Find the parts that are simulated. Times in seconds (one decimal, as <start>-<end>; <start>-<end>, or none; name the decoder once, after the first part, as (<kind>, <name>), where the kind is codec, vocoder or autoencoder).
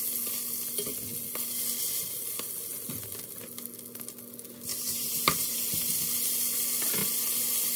4.7-5.6 (vocoder, BigVGAN v2)